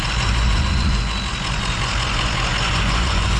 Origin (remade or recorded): remade